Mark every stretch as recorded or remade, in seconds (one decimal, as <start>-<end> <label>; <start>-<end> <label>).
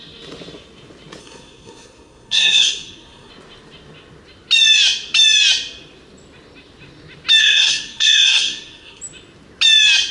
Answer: 0.0-1.2 recorded; 1.2-3.3 remade; 3.3-7.4 recorded; 7.4-9.0 remade; 9.0-10.1 recorded